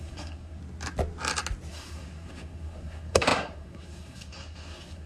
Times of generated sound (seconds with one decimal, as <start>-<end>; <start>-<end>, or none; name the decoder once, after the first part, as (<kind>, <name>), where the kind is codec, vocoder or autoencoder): 0.0-0.6 (codec, SNAC); 1.7-5.1